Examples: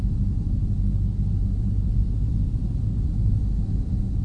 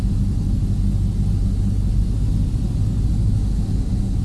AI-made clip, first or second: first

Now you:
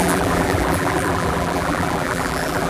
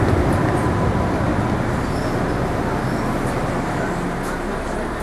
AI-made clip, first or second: first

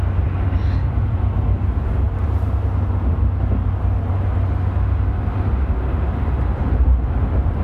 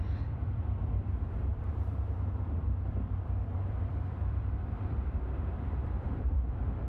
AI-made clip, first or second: second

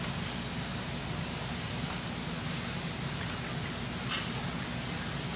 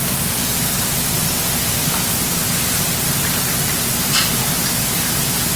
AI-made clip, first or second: second